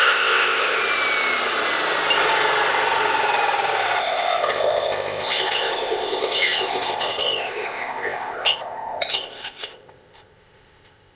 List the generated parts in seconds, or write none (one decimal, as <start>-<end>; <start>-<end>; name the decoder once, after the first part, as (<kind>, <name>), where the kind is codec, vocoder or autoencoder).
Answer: 0.0-0.8 (codec, ZipCodec); 4.0-11.2